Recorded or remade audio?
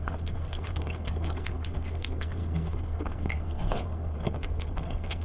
remade